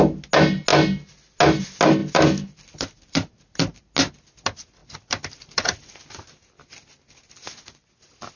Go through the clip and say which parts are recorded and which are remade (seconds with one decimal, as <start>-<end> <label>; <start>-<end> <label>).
0.0-2.0 recorded; 2.0-3.8 remade; 3.8-4.8 recorded; 4.8-5.8 remade; 5.8-8.4 recorded